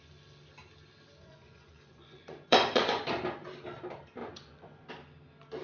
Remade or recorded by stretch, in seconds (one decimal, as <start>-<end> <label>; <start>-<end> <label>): 0.0-1.2 recorded; 1.2-3.0 remade; 3.0-4.2 recorded; 4.2-4.9 remade; 4.9-5.6 recorded